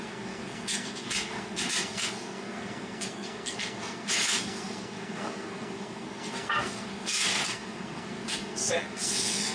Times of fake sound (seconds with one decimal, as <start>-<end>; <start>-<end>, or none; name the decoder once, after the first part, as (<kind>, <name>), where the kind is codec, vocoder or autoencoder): 0.0-9.5 (codec, SNAC)